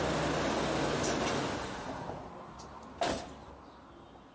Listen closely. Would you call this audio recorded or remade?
recorded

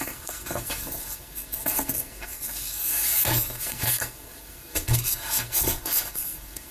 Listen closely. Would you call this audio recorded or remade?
remade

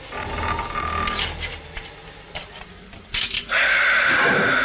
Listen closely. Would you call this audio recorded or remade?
recorded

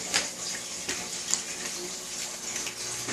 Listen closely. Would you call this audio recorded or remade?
recorded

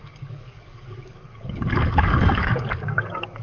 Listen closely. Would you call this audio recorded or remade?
remade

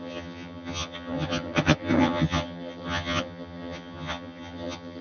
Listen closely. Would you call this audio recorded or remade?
remade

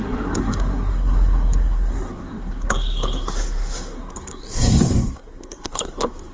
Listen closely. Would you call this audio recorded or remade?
remade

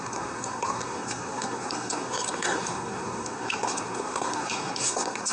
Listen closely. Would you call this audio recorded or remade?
remade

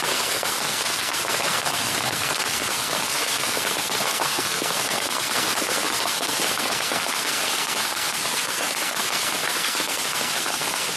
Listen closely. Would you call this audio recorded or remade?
remade